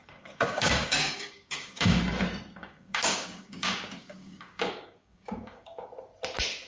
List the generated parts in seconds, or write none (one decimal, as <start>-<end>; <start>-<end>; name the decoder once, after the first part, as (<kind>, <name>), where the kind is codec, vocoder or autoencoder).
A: 0.0-2.0 (codec, DAC); 2.6-5.9